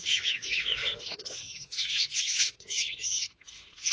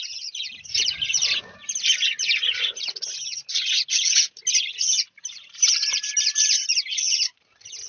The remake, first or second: first